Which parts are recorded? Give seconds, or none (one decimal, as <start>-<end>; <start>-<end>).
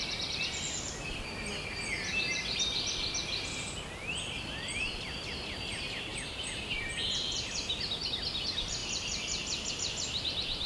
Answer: 3.2-4.1